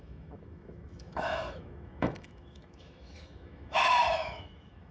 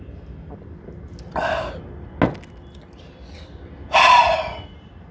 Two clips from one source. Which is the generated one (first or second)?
first